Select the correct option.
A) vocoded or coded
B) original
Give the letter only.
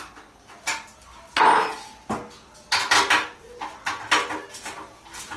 B